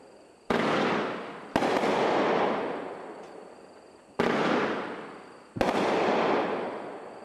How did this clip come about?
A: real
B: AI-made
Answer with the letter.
A